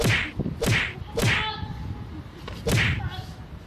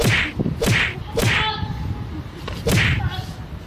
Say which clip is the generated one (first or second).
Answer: second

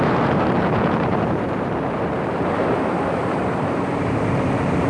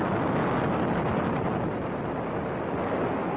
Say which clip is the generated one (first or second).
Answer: first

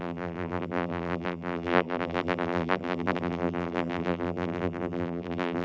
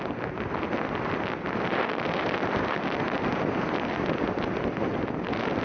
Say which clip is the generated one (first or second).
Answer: first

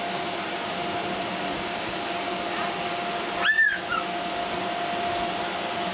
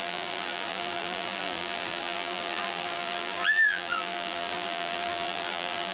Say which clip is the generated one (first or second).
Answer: second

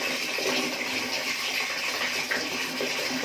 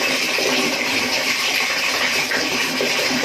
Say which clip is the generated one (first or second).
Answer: second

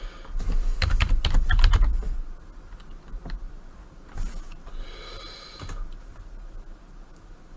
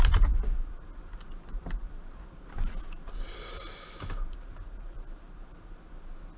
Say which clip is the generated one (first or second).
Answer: second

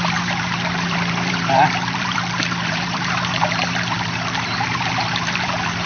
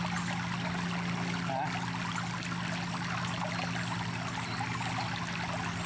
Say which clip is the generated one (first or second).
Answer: first